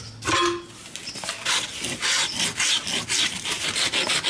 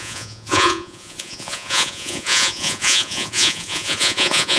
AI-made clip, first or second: second